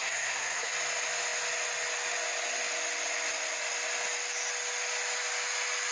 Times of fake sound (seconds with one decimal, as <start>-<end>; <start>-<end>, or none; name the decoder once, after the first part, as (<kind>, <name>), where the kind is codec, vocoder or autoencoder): 0.0-0.7 (codec, SNAC)

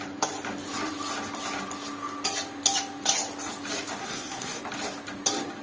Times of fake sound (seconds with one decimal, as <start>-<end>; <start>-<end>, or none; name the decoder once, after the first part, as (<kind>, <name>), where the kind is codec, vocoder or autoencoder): 4.0-4.6 (codec, SNAC)

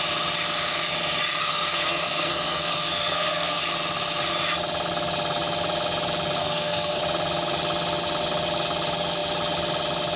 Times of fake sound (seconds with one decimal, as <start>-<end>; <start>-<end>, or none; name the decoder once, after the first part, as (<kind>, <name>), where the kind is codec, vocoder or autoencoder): 1.4-3.6 (codec, SNAC); 6.4-7.0

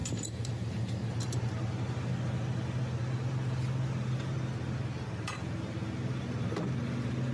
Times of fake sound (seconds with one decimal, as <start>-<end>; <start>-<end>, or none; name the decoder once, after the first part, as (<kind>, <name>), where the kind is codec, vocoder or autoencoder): none

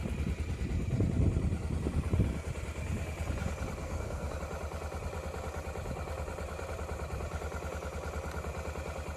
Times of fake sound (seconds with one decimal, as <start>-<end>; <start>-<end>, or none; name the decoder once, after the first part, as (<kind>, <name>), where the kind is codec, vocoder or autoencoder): 3.8-4.4 (codec, SNAC)

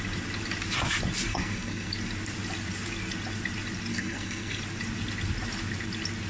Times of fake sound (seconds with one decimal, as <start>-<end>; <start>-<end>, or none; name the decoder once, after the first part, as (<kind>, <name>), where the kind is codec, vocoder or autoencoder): 1.3-1.9 (codec, SNAC); 3.9-4.6